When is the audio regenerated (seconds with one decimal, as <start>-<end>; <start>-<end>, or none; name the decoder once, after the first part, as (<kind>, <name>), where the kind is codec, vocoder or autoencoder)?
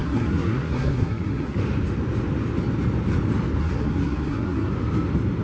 0.0-1.6 (codec, SNAC); 3.6-4.7